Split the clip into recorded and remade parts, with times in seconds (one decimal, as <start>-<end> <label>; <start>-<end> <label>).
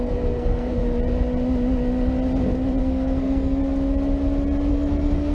0.0-0.8 remade; 0.8-2.8 recorded; 2.8-3.6 remade; 3.6-4.7 recorded; 4.7-5.3 remade